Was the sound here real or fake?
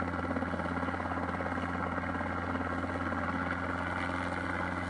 real